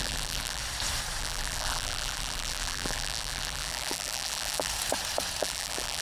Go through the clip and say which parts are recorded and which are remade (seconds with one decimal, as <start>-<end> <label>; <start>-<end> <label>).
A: 0.0-0.6 remade; 0.6-1.2 recorded; 1.2-4.7 remade; 4.7-5.4 recorded; 5.4-6.0 remade